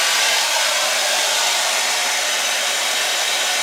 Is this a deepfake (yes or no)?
no